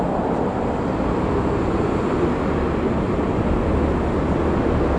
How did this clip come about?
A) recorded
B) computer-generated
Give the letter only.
A